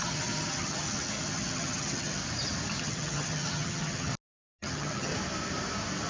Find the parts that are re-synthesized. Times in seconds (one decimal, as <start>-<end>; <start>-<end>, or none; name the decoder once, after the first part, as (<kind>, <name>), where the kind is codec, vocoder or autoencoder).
0.0-2.2 (vocoder, HiFi-GAN); 2.8-4.1; 4.6-5.1